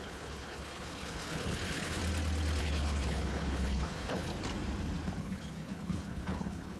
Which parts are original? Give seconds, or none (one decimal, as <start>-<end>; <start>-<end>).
2.0-2.6; 4.3-5.2